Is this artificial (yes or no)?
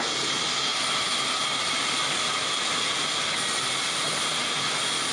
no